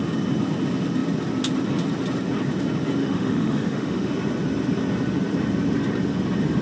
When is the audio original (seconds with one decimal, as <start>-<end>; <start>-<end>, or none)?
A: 0.0-3.0; 4.1-6.6